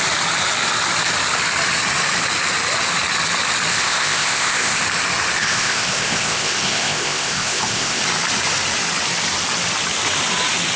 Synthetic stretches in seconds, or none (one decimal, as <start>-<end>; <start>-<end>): 3.7-4.8; 5.4-8.0